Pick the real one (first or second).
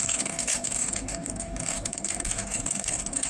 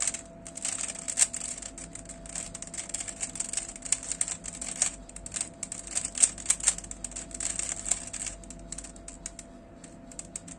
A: second